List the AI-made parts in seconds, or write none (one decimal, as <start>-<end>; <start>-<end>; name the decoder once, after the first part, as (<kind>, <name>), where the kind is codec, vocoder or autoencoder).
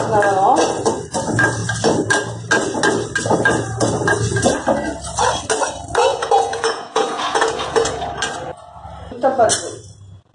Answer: 6.1-8.1 (vocoder, Vocos)